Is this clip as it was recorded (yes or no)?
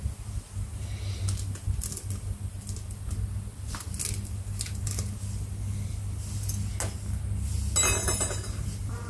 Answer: yes